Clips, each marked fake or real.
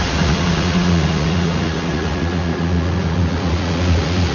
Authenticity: fake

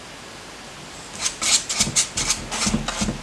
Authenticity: real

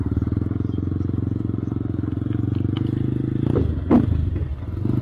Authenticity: real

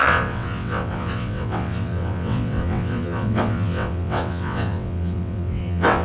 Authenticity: fake